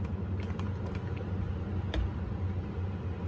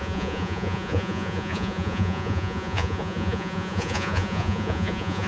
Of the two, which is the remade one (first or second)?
second